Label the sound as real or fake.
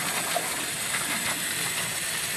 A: real